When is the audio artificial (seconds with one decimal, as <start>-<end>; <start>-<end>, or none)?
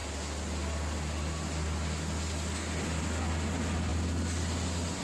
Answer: none